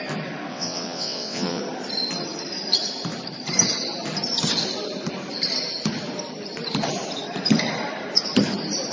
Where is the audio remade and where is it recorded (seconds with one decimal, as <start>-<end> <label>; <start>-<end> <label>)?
0.0-0.5 recorded; 0.5-1.6 remade; 1.6-8.9 recorded